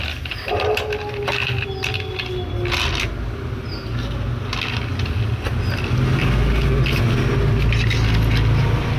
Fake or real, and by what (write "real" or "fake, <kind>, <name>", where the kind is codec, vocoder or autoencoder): real